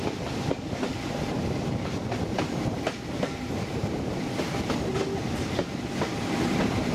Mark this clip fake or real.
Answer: real